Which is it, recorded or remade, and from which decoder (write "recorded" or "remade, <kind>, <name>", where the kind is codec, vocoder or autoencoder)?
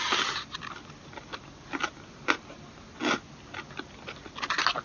recorded